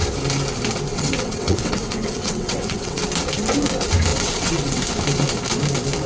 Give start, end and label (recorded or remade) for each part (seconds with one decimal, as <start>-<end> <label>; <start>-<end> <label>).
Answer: 0.0-0.9 recorded; 0.9-3.0 remade; 3.0-4.1 recorded; 4.1-4.8 remade; 4.8-6.1 recorded